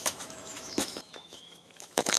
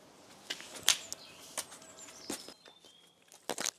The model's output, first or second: first